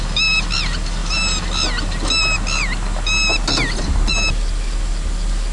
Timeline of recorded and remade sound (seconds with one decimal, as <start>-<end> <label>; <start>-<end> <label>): 0.0-5.5 recorded